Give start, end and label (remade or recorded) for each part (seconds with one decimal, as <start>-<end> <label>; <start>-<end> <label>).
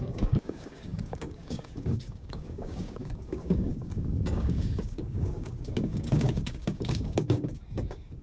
0.0-8.2 remade